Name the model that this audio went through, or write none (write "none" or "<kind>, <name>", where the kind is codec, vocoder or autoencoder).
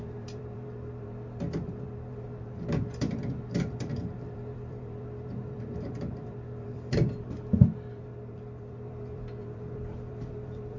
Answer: vocoder, BigVGAN v2